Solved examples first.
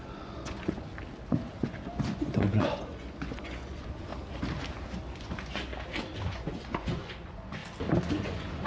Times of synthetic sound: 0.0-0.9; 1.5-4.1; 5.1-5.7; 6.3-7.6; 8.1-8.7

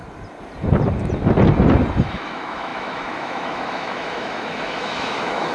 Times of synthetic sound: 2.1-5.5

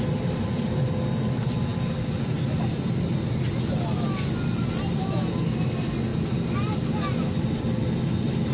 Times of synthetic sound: none

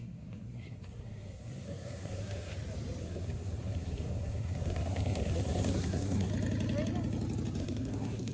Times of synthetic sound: 0.0-2.5; 3.0-6.3; 7.6-8.3

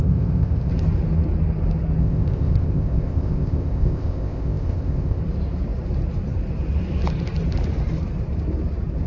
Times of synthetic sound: 0.0-0.7; 2.0-5.2

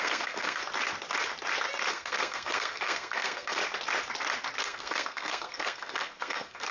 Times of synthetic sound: 0.0-0.6; 1.9-3.6; 4.6-6.7

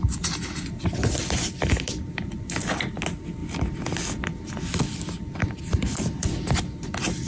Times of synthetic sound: none

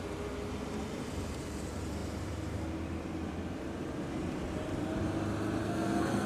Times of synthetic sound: 5.6-6.3